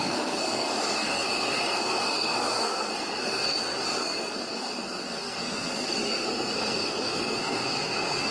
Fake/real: fake